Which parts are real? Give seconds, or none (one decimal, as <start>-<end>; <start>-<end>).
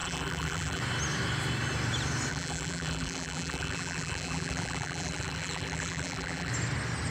0.8-2.3; 6.5-7.1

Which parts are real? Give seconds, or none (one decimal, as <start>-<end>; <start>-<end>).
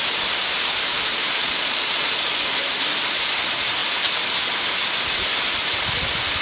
0.0-0.9; 2.1-6.4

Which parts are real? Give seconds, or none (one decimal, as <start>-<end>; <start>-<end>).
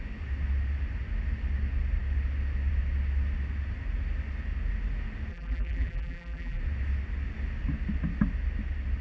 0.0-5.3; 6.6-9.0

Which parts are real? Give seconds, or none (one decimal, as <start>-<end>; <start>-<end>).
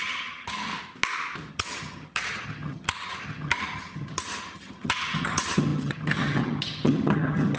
0.7-1.5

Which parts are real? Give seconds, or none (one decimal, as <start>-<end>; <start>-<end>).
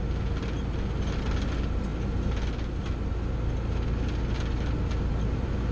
0.0-5.7